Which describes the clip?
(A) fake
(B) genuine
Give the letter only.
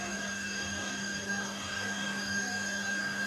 A